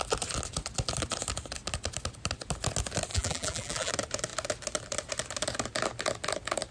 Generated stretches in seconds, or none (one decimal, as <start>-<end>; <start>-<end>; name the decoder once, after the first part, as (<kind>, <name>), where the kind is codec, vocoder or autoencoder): 3.1-3.9 (vocoder, BigVGAN v2)